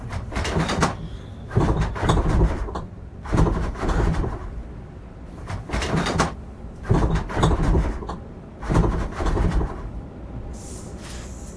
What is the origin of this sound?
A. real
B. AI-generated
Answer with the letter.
B